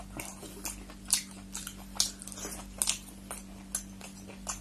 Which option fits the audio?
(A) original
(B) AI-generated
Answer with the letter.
A